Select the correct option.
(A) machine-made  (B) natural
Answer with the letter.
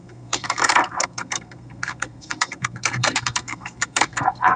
A